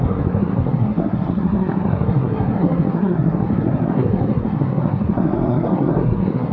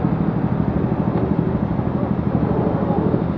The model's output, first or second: first